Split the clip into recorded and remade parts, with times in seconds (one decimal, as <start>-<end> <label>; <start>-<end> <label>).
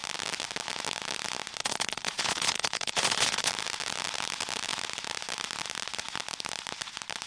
0.0-1.6 recorded; 1.6-3.5 remade; 3.5-7.3 recorded